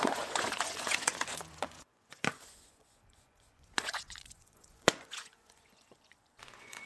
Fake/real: fake